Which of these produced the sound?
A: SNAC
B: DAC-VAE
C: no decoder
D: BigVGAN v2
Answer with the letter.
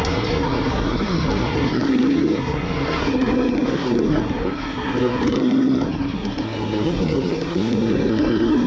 A